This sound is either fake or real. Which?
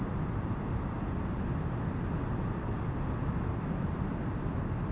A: real